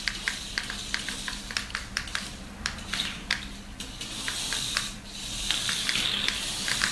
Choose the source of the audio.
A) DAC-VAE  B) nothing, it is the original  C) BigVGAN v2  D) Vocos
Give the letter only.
C